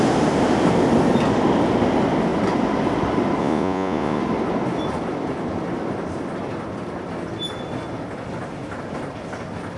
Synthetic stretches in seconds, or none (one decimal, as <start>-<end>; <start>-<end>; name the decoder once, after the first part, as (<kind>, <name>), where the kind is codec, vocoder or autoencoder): 3.4-4.2 (vocoder, Vocos)